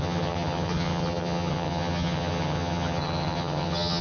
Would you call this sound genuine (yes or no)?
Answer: no